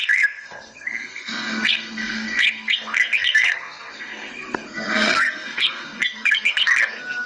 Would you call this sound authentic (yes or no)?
no